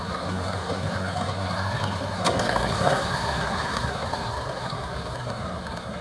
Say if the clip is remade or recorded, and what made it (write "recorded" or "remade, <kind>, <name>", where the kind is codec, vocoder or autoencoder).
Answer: remade, codec, SNAC